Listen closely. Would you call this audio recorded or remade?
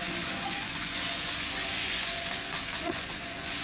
remade